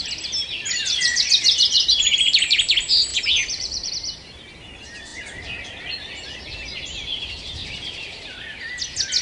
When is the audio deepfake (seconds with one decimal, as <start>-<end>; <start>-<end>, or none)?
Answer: 0.8-1.3; 3.1-3.9; 7.6-8.3